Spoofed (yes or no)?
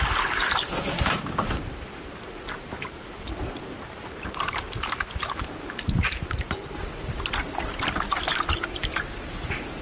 yes